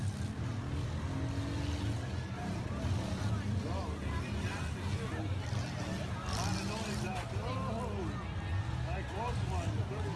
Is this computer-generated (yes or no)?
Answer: no